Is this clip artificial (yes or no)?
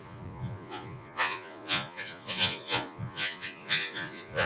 yes